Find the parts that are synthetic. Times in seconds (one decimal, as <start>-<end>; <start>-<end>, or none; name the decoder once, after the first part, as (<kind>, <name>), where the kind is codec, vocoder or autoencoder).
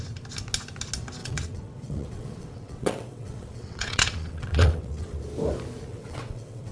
1.2-5.2 (vocoder, WaveNeXt); 5.9-6.7